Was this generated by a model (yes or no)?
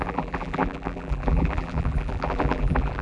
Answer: yes